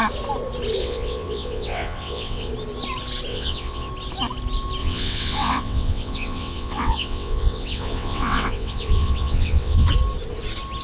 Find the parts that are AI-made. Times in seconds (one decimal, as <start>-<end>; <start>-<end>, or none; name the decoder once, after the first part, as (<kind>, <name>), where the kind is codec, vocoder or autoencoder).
0.8-2.5 (vocoder, WaveNeXt); 3.3-3.9; 4.8-9.9